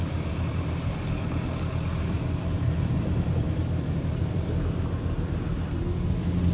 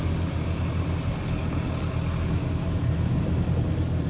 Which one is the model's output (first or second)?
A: first